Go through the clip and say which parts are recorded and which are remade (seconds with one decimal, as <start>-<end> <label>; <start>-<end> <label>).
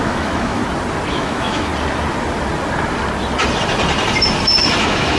0.0-0.6 remade; 0.6-1.1 recorded; 1.1-1.7 remade; 1.7-4.8 recorded; 4.8-5.2 remade